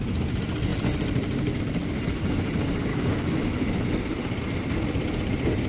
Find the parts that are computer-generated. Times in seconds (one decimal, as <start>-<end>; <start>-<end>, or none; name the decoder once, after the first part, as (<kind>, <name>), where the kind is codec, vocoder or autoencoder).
2.9-3.6 (autoencoder, DAC-VAE)